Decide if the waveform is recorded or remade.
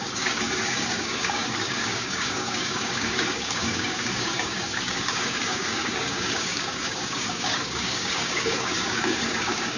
remade